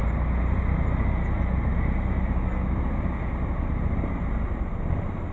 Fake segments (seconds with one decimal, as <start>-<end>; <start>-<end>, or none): none